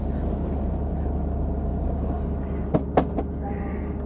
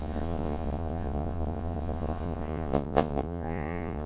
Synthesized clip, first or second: second